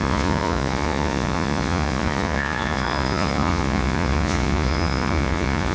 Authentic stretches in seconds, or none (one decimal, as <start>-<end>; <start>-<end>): none